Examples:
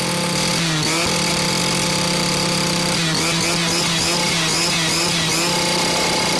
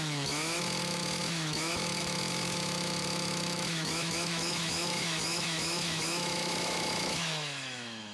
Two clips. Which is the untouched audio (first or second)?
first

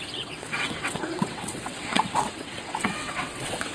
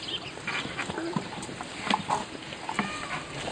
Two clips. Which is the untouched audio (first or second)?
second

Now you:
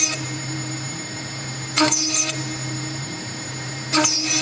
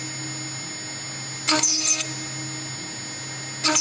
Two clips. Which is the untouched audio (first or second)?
second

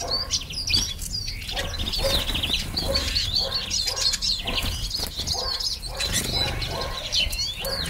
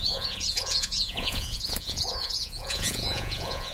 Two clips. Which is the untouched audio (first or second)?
first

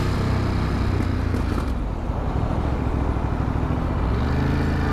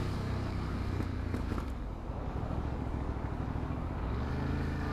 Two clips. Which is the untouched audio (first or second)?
first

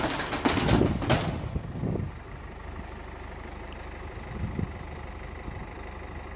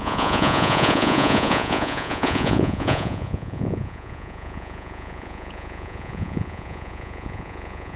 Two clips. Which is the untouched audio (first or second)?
first